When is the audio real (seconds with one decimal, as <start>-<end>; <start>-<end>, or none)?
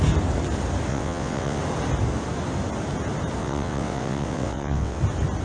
0.0-0.9; 1.6-3.4; 5.0-5.4